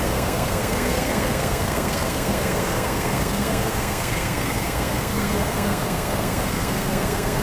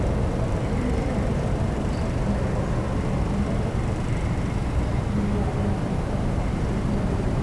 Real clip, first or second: second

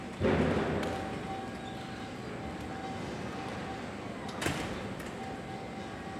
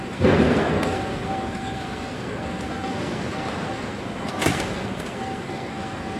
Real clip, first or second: first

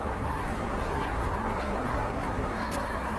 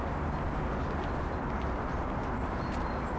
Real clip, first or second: second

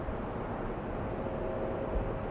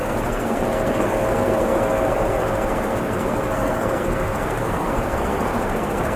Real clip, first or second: first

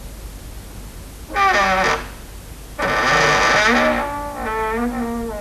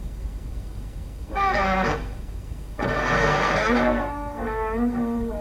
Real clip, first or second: first